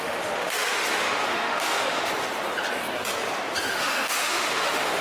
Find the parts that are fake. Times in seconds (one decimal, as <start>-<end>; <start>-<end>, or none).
0.0-2.1; 3.7-5.0